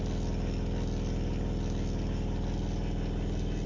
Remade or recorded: recorded